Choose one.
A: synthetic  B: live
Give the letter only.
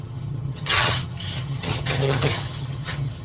A